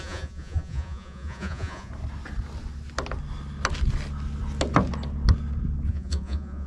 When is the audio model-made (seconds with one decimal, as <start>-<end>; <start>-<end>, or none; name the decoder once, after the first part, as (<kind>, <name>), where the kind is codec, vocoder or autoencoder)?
0.0-1.9 (vocoder, Vocos); 5.9-6.7